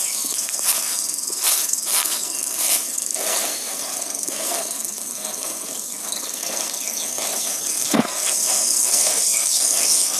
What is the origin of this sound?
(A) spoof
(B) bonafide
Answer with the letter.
A